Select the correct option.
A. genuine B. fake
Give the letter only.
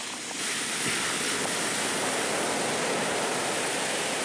A